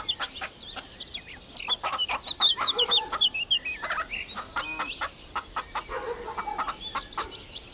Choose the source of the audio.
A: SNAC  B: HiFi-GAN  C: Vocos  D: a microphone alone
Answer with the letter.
D